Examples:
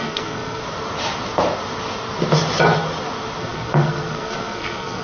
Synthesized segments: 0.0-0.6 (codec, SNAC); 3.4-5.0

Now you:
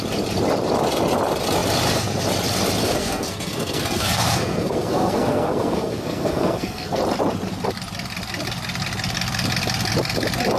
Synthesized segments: 2.8-7.0 (codec, SNAC)

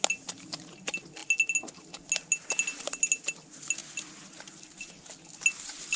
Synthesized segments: none

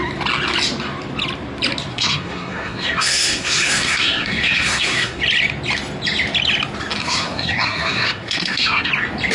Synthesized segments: 1.9-5.2 (codec, SNAC); 7.0-8.9

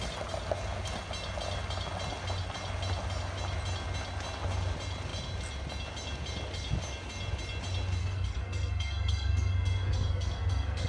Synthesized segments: 8.0-10.9 (codec, SNAC)

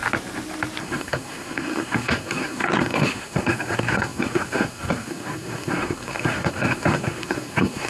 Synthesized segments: 0.8-7.9 (codec, SNAC)